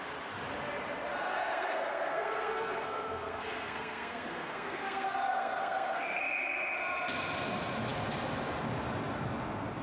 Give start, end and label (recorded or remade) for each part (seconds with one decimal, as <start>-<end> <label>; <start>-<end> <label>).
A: 0.0-1.3 recorded; 1.3-6.2 remade; 6.2-9.8 recorded